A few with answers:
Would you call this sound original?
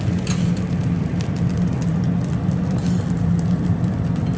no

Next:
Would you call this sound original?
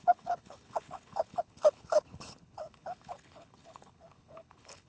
no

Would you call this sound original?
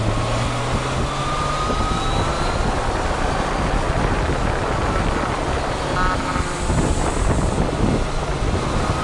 yes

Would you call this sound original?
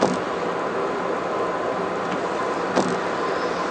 yes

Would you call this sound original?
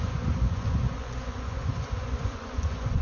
no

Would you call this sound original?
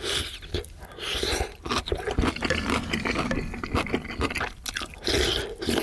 yes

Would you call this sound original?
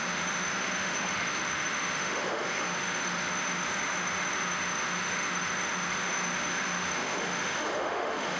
no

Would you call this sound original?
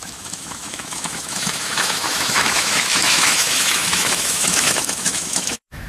no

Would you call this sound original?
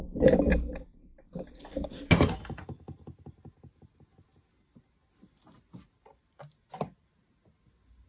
yes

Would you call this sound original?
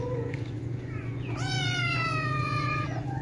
no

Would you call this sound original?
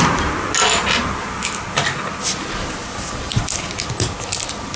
yes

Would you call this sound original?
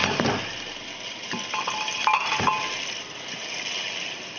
yes